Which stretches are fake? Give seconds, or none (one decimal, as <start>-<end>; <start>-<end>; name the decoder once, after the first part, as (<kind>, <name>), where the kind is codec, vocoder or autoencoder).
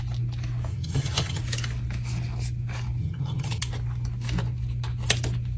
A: 0.7-1.4 (vocoder, HiFi-GAN); 3.0-3.6